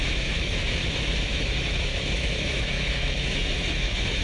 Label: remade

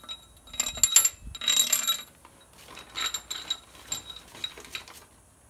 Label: recorded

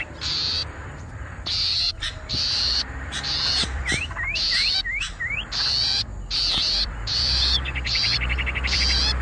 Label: remade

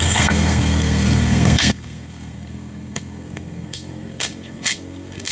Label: remade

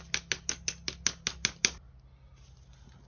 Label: recorded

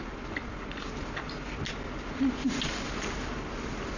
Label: recorded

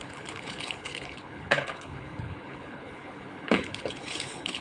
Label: remade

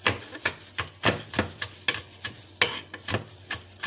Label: recorded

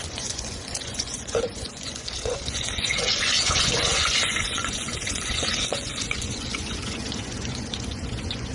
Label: remade